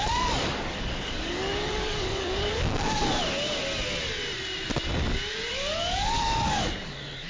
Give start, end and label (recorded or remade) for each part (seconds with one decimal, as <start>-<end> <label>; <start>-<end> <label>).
0.0-3.0 remade; 3.0-5.5 recorded; 5.5-7.3 remade